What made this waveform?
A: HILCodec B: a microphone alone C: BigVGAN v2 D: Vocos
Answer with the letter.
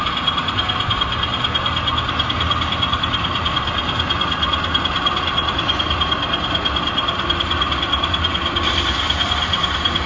B